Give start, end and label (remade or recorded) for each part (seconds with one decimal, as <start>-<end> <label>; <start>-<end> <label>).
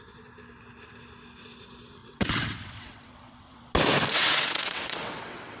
0.0-2.0 recorded; 2.0-3.6 remade; 3.6-4.1 recorded; 4.1-5.6 remade